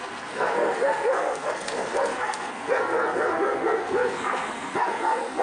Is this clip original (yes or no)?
no